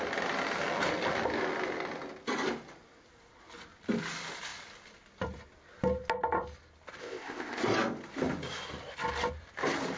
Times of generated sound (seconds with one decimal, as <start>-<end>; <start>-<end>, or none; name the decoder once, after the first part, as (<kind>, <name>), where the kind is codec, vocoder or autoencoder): 7.0-7.6 (codec, ZipCodec)